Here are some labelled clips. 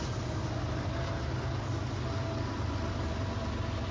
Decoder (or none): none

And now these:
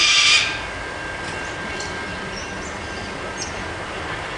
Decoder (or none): none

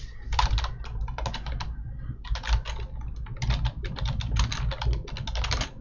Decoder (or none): none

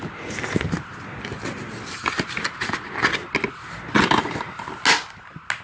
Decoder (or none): none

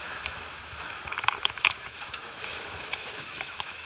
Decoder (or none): autoencoder, DAC-VAE